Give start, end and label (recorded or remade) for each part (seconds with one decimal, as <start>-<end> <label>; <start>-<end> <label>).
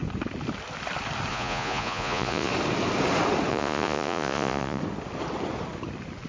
0.0-1.3 recorded; 1.3-2.5 remade; 2.5-3.5 recorded; 3.5-4.8 remade; 4.8-6.3 recorded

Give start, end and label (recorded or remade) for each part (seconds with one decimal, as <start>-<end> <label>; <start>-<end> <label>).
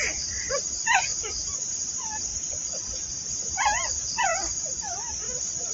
0.0-5.7 recorded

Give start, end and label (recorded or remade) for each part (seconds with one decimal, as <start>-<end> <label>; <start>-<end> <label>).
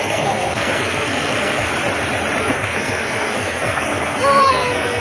0.0-1.7 remade; 1.7-2.4 recorded; 2.4-5.0 remade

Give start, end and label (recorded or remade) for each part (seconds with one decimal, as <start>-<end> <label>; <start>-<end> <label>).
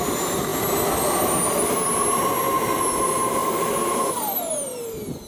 0.0-5.3 recorded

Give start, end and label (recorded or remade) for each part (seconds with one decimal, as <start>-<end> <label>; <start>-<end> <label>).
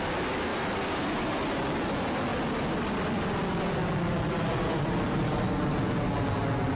0.0-0.5 recorded; 0.5-1.3 remade; 1.3-2.3 recorded; 2.3-5.4 remade; 5.4-6.8 recorded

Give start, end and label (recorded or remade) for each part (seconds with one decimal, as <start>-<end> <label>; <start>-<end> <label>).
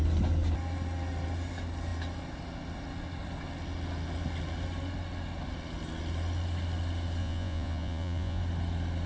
0.0-7.2 recorded; 7.2-8.4 remade; 8.4-9.1 recorded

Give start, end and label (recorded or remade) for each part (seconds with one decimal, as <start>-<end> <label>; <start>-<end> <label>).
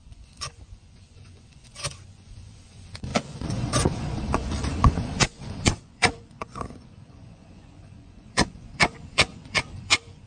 0.0-10.3 remade